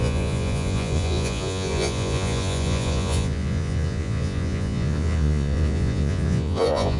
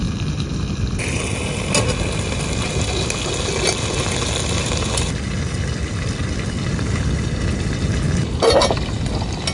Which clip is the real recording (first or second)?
second